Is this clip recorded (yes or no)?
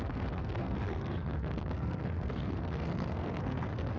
no